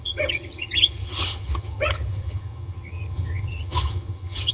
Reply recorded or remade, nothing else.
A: remade